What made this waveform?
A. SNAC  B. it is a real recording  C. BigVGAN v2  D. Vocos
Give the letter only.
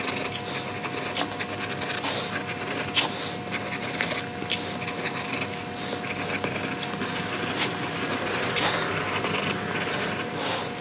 B